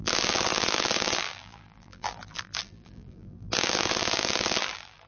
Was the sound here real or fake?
fake